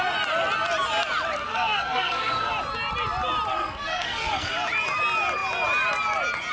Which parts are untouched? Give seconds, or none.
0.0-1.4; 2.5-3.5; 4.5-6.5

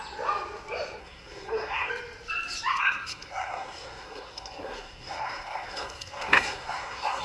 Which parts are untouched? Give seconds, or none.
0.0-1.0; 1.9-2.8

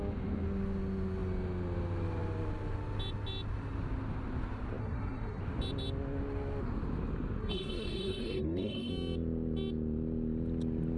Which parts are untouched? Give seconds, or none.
0.0-4.8; 5.4-7.4; 8.9-11.0

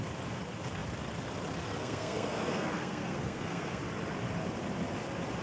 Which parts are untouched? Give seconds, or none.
0.0-1.8; 3.8-5.4

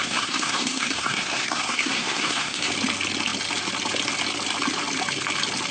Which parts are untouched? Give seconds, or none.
2.7-5.7

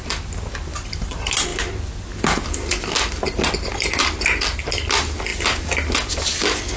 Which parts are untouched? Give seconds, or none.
0.0-6.8

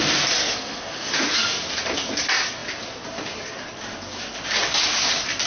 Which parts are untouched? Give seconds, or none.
0.0-0.4; 1.1-5.5